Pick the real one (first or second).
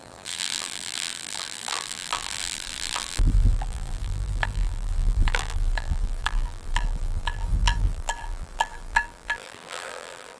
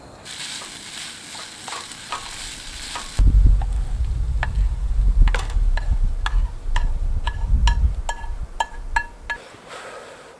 second